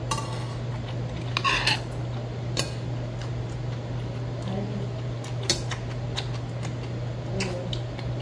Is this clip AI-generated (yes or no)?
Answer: no